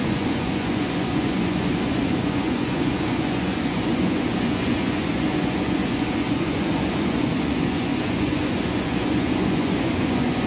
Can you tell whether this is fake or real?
fake